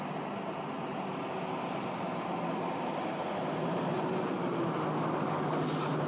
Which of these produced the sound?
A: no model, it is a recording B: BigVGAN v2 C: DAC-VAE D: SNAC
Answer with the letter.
A